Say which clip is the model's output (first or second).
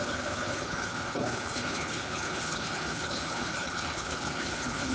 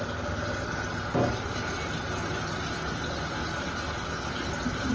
first